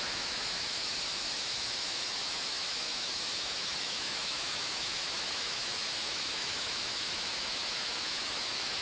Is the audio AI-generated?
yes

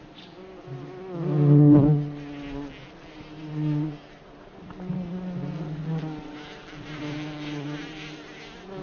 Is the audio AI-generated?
no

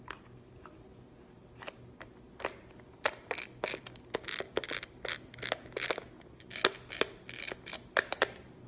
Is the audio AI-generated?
no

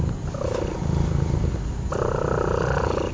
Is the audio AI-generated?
no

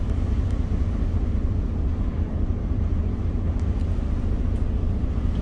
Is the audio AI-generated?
yes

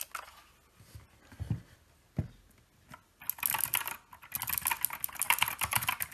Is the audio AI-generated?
no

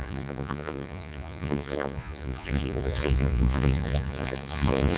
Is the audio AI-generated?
yes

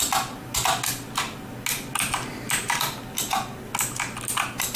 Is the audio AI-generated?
no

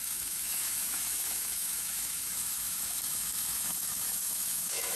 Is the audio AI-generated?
yes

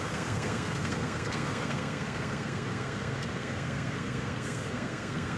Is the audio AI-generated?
yes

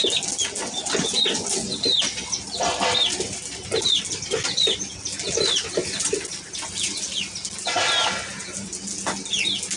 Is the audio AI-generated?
no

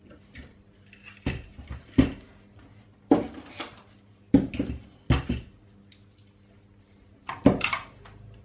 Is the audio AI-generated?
no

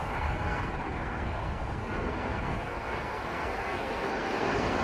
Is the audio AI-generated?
yes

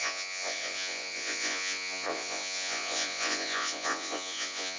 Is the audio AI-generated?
yes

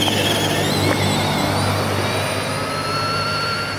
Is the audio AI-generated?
no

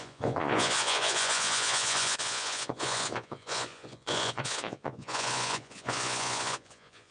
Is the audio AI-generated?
yes